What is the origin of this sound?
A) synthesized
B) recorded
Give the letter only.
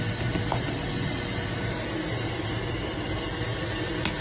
B